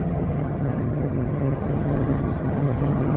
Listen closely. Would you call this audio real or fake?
fake